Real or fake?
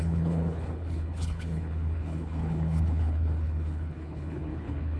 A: fake